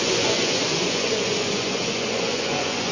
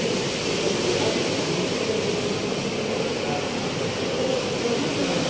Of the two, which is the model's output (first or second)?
first